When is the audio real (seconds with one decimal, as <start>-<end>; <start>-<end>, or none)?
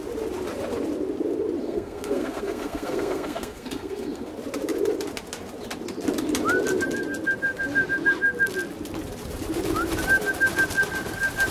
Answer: 0.0-1.6; 4.3-11.5